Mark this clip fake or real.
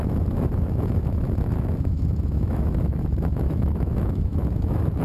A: fake